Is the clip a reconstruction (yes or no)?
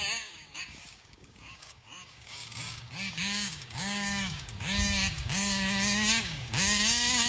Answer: yes